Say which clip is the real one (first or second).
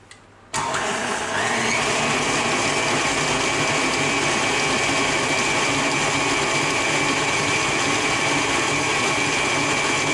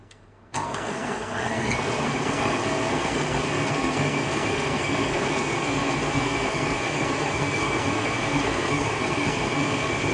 first